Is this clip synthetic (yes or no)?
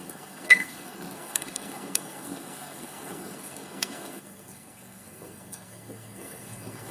yes